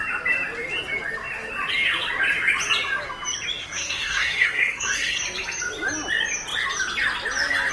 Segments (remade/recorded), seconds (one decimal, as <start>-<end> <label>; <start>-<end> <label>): 0.0-3.6 recorded; 3.6-5.2 remade; 5.2-7.7 recorded